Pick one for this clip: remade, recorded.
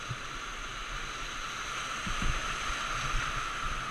recorded